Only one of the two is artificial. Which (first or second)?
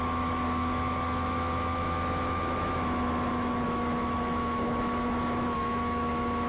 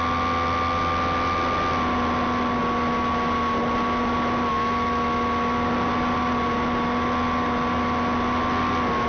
first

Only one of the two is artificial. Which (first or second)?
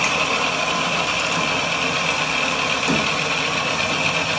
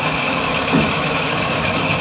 second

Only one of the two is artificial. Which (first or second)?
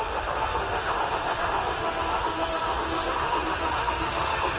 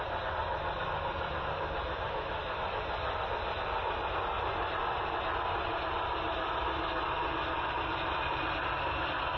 first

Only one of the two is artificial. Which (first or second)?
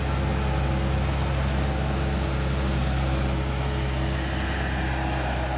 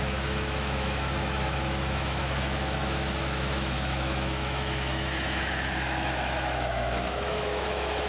second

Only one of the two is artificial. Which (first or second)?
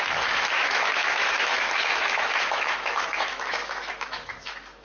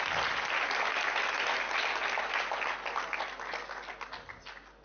first